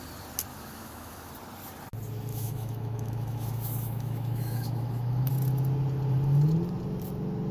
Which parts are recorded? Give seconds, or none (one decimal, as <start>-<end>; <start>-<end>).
0.0-0.5; 1.3-2.3; 5.3-7.5